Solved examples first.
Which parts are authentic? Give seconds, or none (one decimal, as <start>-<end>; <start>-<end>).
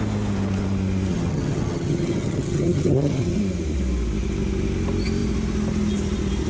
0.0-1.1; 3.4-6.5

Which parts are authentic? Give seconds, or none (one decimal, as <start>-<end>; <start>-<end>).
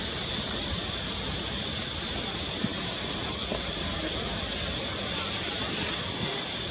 0.0-6.7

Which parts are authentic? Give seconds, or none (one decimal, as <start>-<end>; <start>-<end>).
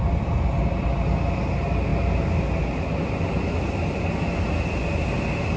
0.0-5.6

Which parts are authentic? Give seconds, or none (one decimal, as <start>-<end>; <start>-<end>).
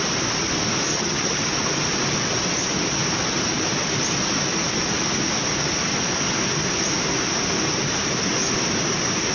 0.0-0.9; 1.4-9.3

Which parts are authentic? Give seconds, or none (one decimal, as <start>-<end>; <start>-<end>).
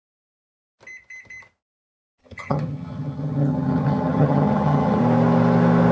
0.0-2.2; 5.0-5.9